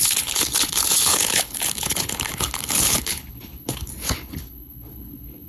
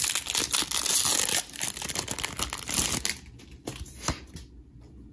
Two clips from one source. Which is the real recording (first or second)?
second